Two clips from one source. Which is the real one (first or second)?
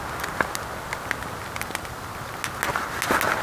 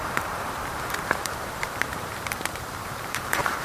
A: first